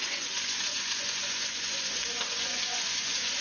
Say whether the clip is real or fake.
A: fake